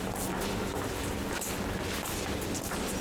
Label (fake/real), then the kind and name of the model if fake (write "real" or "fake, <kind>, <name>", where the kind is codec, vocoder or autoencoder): real